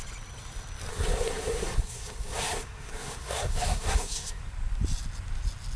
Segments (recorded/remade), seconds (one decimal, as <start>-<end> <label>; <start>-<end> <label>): 0.0-0.9 recorded; 0.9-4.4 remade; 4.4-5.8 recorded

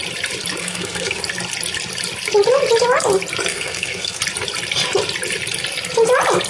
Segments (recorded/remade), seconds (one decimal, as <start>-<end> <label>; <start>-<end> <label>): 0.0-0.6 recorded; 0.6-1.2 remade; 1.2-3.5 recorded; 3.5-4.2 remade; 4.2-6.5 recorded

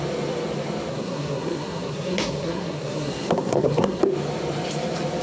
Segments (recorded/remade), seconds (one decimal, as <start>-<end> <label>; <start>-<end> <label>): 0.0-0.9 recorded; 0.9-4.0 remade; 4.0-5.2 recorded

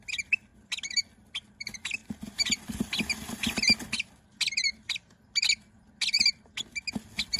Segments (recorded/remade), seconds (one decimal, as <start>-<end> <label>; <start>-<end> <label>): 0.0-7.4 recorded

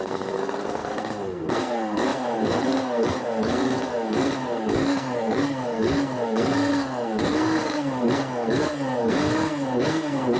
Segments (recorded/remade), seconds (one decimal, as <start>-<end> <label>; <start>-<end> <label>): 0.0-10.4 remade